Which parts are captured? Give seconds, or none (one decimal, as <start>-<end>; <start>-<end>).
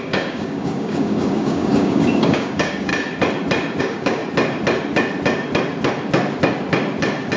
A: 2.9-3.8; 4.2-7.4